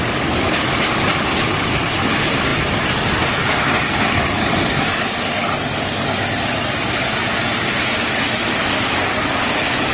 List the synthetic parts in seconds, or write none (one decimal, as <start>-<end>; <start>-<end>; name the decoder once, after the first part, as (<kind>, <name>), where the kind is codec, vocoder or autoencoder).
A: 0.0-7.2 (vocoder, BigVGAN v2); 8.0-9.9